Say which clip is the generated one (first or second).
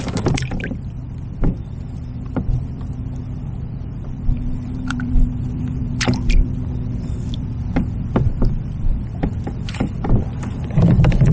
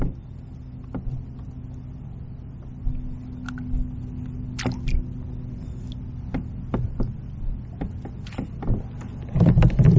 first